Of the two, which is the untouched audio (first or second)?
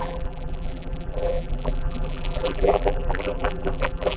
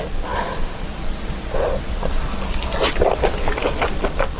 second